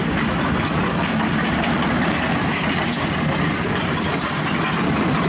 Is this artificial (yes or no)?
no